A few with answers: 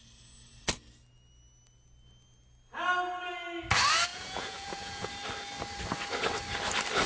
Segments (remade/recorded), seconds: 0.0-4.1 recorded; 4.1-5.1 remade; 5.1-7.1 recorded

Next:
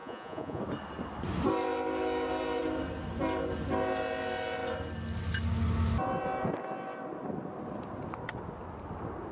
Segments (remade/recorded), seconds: 0.0-0.6 remade; 0.6-9.3 recorded